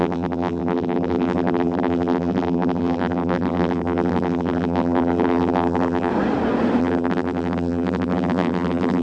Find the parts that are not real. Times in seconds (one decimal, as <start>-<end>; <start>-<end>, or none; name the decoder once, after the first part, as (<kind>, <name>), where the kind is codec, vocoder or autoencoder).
0.0-6.1 (vocoder, BigVGAN v2); 6.8-9.0

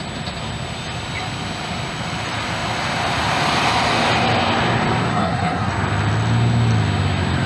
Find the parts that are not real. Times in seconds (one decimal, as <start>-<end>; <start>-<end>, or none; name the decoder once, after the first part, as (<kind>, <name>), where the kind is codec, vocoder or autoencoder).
5.1-5.7 (codec, SNAC)

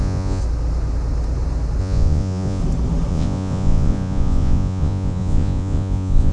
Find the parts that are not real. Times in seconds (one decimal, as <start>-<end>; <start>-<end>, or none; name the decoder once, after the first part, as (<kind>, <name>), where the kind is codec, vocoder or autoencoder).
0.0-0.4 (vocoder, Vocos); 1.8-2.6; 3.1-6.3

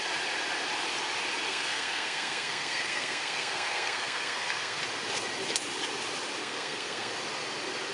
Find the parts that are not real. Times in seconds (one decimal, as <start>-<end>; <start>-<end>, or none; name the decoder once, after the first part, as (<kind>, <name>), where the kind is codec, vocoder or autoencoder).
1.5-4.8 (codec, SNAC); 6.4-7.1

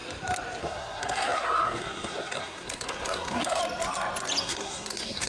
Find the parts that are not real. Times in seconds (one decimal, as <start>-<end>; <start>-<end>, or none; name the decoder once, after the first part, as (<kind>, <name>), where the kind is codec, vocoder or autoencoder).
0.6-3.6 (codec, SNAC); 4.4-5.3

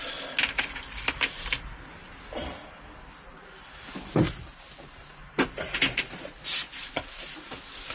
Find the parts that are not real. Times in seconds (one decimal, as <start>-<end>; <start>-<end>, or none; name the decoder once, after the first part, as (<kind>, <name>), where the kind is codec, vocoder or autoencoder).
none

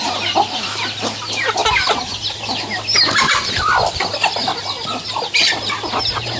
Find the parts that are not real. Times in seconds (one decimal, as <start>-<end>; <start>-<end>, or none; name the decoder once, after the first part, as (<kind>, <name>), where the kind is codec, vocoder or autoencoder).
none

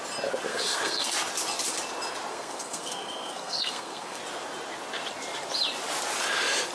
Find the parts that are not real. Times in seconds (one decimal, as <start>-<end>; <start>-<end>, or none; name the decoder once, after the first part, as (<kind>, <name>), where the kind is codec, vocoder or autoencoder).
0.5-1.1 (codec, SNAC); 2.3-4.2